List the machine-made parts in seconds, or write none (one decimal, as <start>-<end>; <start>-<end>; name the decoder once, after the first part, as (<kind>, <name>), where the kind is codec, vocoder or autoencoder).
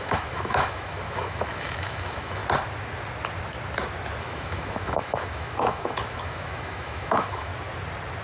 0.0-2.4 (autoencoder, DAC-VAE); 4.2-7.5